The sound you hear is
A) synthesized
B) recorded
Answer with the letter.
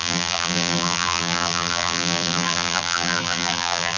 A